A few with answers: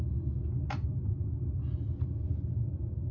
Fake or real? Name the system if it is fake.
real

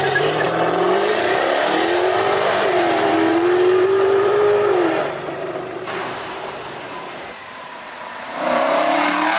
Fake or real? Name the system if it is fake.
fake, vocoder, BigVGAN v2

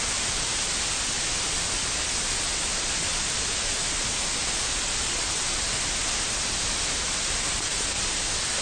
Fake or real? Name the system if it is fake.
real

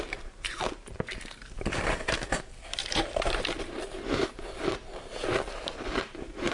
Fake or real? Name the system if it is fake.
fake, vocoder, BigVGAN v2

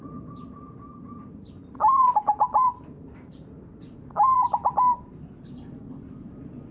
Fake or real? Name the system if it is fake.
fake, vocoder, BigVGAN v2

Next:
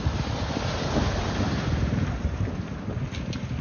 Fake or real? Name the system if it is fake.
fake, vocoder, BigVGAN v2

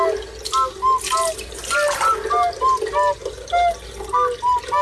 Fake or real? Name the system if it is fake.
real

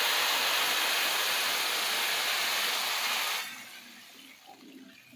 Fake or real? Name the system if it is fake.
real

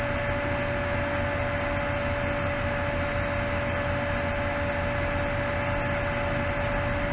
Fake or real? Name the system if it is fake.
real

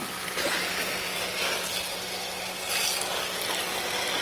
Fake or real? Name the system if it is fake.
real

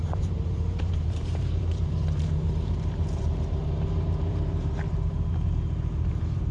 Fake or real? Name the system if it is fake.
fake, vocoder, BigVGAN v2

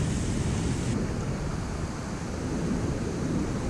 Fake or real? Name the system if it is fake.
real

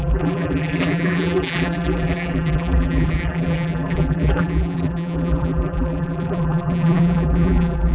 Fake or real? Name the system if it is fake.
fake, vocoder, BigVGAN v2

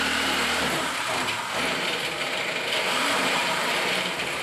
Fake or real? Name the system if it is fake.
fake, vocoder, BigVGAN v2